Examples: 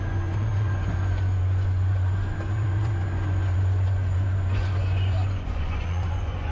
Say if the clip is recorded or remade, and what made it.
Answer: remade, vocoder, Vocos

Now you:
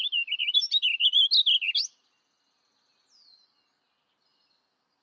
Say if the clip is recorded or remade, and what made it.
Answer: recorded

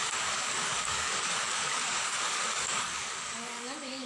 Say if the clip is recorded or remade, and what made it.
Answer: remade, codec, DAC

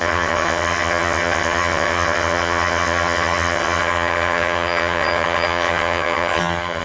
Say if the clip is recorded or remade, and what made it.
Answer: remade, vocoder, HiFi-GAN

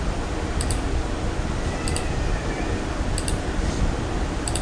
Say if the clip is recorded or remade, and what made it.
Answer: remade, vocoder, BigVGAN v2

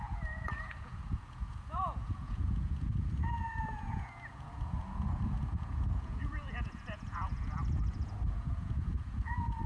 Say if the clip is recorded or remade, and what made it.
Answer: remade, vocoder, Vocos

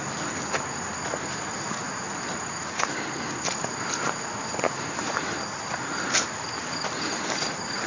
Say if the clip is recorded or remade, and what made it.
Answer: recorded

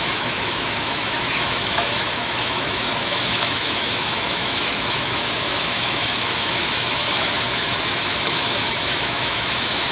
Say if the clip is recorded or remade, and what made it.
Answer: remade, autoencoder, DAC-VAE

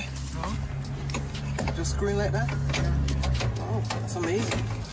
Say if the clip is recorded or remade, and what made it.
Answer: recorded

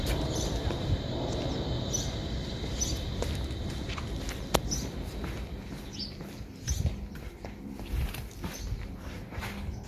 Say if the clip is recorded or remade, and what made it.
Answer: remade, vocoder, BigVGAN v2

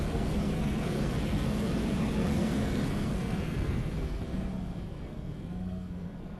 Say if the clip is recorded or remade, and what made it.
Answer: remade, codec, SNAC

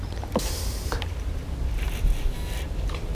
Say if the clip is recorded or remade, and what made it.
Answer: recorded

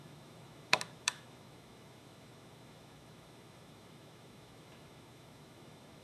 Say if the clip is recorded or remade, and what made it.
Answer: remade, autoencoder, DAC-VAE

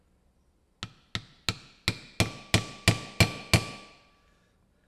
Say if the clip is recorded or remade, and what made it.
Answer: recorded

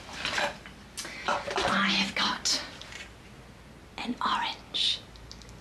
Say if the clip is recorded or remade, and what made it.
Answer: recorded